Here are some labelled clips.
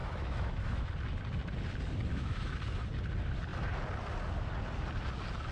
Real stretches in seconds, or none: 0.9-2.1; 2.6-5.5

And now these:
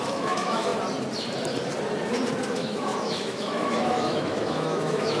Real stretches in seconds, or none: 0.7-2.5